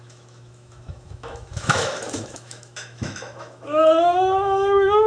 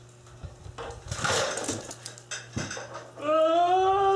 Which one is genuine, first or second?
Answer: second